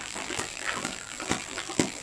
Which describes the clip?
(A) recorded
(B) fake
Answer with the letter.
B